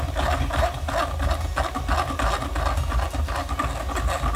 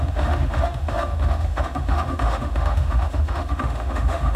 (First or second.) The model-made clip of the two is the second